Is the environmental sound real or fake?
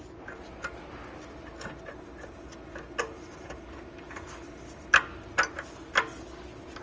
real